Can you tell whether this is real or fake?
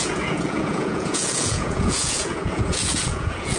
fake